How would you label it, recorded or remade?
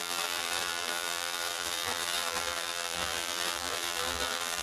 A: remade